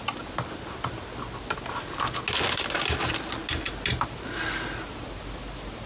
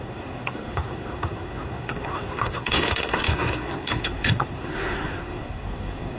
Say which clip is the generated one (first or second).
second